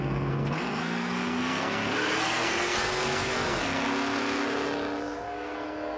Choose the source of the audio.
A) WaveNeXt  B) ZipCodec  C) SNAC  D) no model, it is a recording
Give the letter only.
C